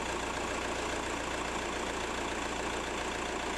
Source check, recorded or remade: recorded